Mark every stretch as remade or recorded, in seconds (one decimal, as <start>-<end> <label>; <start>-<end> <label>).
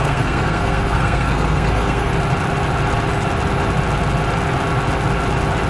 0.0-2.1 remade; 2.1-5.7 recorded